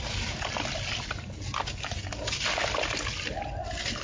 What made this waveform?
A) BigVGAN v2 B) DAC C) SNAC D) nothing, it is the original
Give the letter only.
D